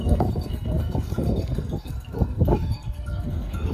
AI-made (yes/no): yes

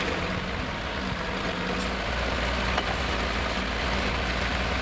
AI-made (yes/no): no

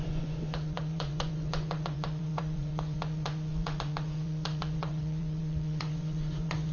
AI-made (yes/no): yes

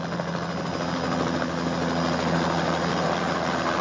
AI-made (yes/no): no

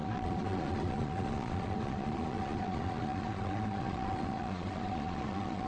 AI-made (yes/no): yes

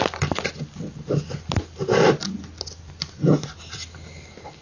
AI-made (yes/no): no